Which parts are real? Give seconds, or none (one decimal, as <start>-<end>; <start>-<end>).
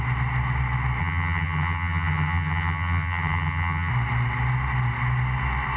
0.0-1.0; 3.9-5.8